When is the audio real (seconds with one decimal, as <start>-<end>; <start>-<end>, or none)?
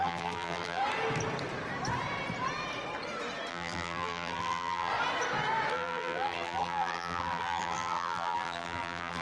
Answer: 0.8-3.5; 4.9-5.7